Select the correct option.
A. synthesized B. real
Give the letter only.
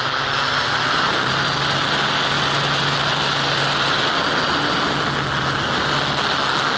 B